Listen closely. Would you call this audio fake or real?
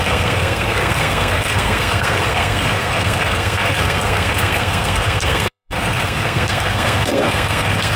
fake